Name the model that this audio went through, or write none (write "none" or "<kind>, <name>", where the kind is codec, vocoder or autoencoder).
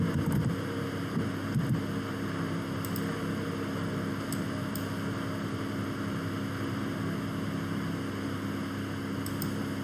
none